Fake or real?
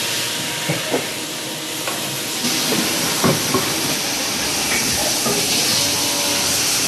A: real